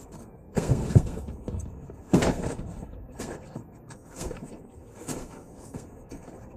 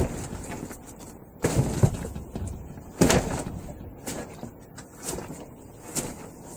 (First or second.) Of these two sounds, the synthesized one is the first